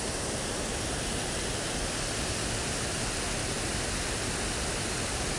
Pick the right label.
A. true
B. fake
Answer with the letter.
A